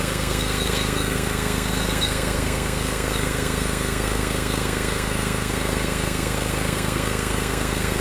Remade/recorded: remade